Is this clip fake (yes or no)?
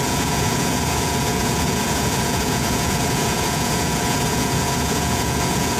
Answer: yes